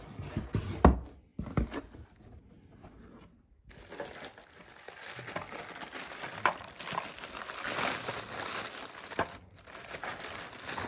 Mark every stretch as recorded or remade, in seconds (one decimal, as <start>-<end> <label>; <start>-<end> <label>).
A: 0.0-10.9 recorded